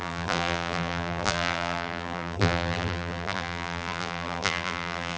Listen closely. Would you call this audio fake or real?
fake